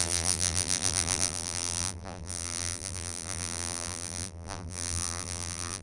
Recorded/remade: remade